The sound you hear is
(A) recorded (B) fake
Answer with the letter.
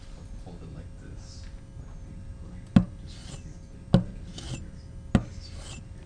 A